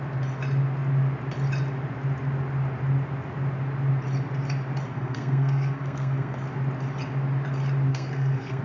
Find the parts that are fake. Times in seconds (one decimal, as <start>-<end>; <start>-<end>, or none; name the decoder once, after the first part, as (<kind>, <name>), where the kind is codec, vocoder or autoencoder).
4.9-6.4 (codec, SNAC); 7.9-8.6